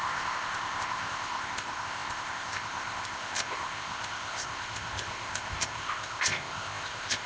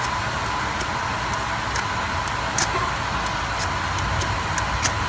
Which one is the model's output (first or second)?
first